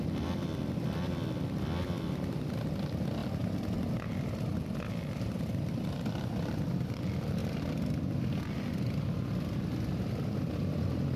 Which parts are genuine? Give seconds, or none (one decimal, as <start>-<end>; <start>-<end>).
0.0-11.2